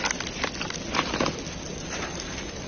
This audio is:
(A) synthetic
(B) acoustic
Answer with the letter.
B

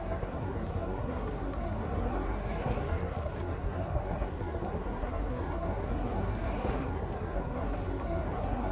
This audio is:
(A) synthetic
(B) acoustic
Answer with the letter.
A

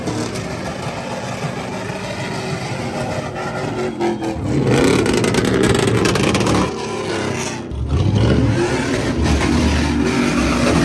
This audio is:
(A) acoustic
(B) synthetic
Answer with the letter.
A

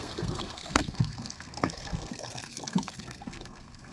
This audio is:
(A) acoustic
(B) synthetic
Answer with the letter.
B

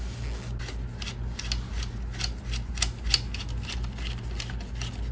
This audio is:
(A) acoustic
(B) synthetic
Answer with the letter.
A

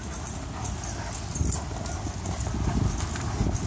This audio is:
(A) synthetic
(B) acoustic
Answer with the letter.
B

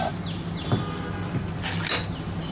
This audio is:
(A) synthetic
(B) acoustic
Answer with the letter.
B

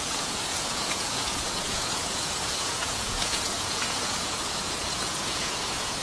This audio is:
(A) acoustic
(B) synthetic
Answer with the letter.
B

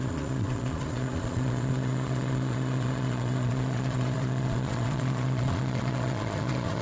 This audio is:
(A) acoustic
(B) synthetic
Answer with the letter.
B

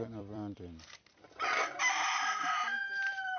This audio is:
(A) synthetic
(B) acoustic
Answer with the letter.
A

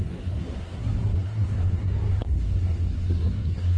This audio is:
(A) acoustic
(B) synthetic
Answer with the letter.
B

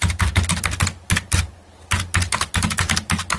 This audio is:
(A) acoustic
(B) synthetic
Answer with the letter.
A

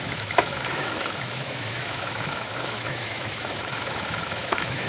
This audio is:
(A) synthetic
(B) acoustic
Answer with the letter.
A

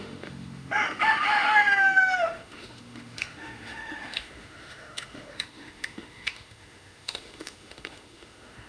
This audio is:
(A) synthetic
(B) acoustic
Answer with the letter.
A